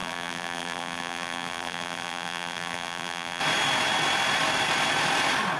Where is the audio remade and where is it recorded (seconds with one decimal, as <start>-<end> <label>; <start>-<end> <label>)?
0.0-3.4 remade; 3.4-5.6 recorded